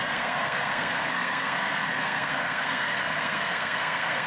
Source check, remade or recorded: remade